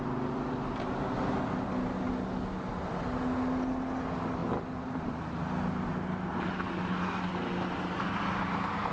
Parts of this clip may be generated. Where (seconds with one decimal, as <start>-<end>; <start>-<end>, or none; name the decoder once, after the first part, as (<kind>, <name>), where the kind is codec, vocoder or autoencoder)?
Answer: none